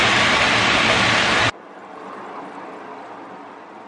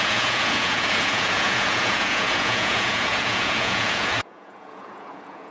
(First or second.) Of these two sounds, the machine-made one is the second